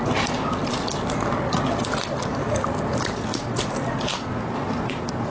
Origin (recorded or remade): recorded